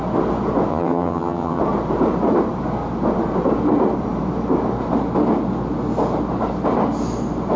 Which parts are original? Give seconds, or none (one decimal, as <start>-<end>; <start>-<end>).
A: 0.0-0.7; 1.6-7.6